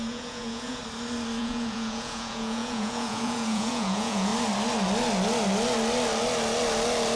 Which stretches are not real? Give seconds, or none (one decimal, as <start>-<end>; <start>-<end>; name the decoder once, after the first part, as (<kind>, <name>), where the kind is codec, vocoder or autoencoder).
0.0-0.8 (vocoder, Vocos); 1.4-4.3